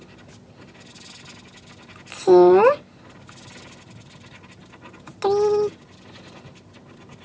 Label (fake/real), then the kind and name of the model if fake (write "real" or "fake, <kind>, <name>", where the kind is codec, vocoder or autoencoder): real